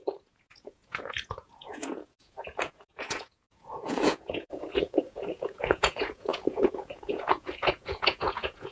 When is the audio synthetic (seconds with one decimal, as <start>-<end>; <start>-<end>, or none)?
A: 0.0-8.7